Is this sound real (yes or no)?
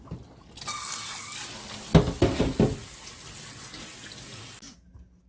yes